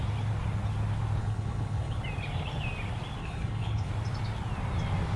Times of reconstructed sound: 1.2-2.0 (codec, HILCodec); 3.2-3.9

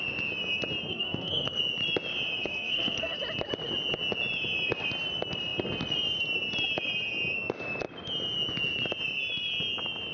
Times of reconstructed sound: 0.9-1.6 (codec, SNAC); 2.5-3.2

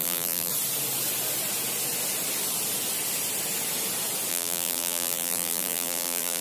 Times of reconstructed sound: 0.0-0.5 (vocoder, BigVGAN v2); 4.3-6.4